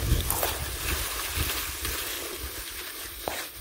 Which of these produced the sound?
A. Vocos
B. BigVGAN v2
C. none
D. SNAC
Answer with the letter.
C